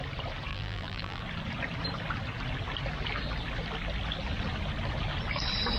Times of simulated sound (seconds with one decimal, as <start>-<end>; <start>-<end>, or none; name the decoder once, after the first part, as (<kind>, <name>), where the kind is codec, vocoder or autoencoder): 0.5-1.2 (vocoder, BigVGAN v2)